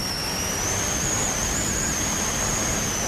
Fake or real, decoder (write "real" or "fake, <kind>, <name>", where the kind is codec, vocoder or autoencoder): fake, vocoder, BigVGAN v2